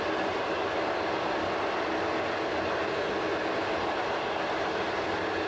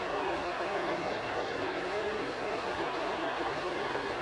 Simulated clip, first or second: second